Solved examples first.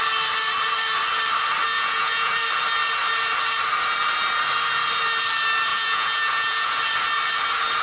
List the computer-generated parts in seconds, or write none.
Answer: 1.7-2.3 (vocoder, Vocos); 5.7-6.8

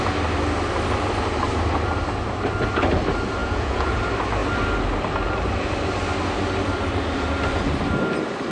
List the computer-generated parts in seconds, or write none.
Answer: 3.4-4.0 (vocoder, Vocos)

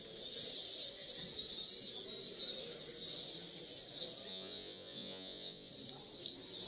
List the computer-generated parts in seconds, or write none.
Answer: 4.3-5.7 (vocoder, Vocos)